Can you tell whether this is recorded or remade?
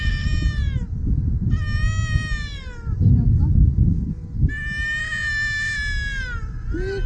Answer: recorded